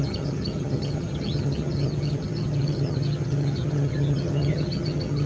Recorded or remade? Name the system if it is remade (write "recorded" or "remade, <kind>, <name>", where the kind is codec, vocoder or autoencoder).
remade, vocoder, HiFi-GAN